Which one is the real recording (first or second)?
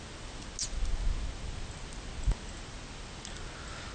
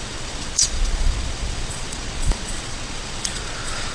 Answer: first